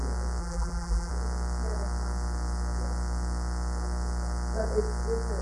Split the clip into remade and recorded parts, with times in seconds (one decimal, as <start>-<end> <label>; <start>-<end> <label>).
0.0-0.4 recorded; 0.4-1.1 remade; 1.1-5.4 recorded